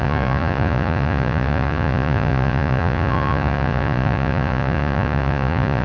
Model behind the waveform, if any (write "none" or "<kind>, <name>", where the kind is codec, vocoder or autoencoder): vocoder, Vocos